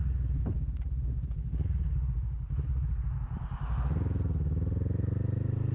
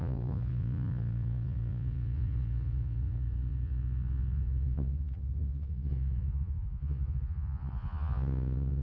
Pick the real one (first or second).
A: first